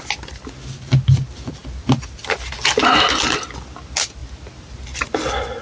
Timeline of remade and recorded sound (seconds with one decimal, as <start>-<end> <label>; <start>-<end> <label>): 0.0-5.6 recorded